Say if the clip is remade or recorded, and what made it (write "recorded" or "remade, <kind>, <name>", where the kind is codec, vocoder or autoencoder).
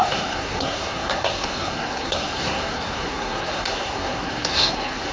remade, codec, SNAC